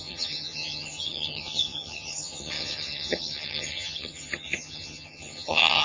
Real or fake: fake